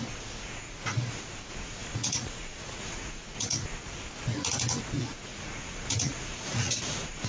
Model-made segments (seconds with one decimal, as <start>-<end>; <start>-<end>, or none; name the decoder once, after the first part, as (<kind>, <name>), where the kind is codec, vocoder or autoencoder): 0.0-3.8 (vocoder, Vocos); 5.0-7.3